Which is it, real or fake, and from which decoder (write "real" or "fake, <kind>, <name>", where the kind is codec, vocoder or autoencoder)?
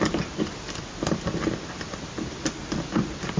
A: real